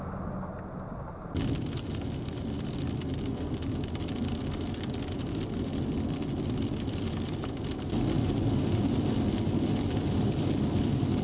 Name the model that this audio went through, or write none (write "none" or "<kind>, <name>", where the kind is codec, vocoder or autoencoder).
none